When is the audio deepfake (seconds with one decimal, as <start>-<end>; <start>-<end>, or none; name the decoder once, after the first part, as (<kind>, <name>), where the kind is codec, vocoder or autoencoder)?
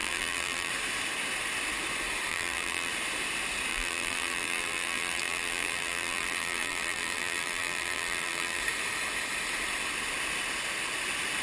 0.0-0.7 (vocoder, BigVGAN v2); 2.3-2.9; 3.7-8.6